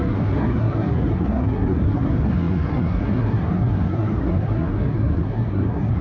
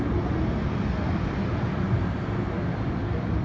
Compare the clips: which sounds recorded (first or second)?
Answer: second